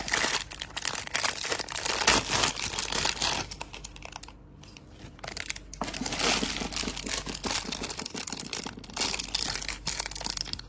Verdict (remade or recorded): recorded